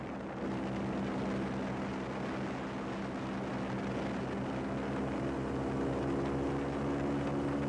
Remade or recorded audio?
recorded